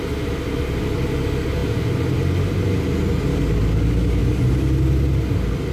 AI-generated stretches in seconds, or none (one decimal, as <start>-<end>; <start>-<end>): 3.3-4.2